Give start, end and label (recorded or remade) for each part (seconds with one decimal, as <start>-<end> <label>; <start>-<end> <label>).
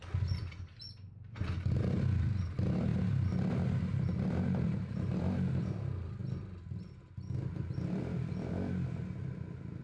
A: 0.0-9.8 recorded